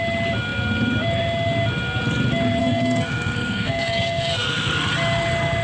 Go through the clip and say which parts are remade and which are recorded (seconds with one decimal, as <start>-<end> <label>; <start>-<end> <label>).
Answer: 0.0-2.6 recorded; 2.6-4.9 remade; 4.9-5.6 recorded